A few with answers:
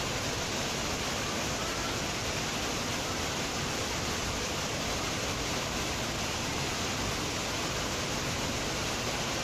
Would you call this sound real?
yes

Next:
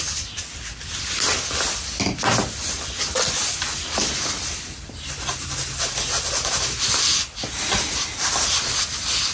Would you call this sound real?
yes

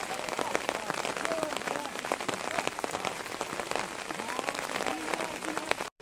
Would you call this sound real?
no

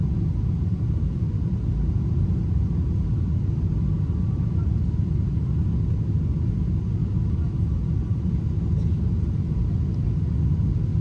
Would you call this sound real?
yes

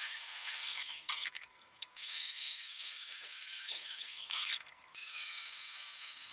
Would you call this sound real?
no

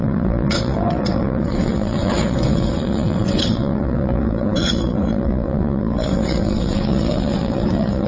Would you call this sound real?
no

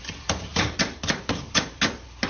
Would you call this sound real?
yes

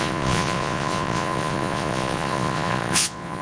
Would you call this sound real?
no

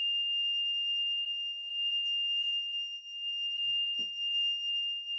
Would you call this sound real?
no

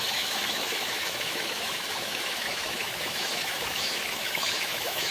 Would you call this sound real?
no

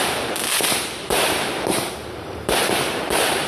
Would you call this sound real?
no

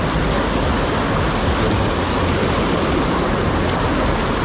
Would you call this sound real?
yes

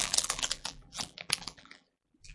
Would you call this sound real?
no